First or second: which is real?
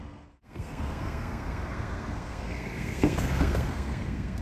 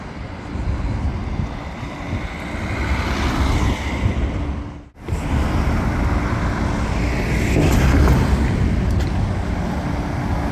second